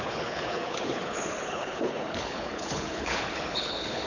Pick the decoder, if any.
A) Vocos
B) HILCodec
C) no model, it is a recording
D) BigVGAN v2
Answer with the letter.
B